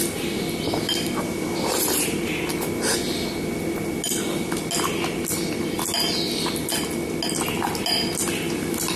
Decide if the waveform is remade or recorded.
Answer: recorded